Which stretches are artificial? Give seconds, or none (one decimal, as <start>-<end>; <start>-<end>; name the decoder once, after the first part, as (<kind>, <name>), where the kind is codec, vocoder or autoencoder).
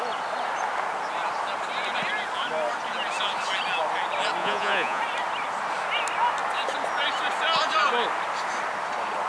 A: 4.4-5.0 (vocoder, Vocos)